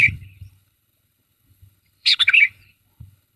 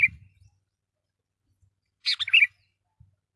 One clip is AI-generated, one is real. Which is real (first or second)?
second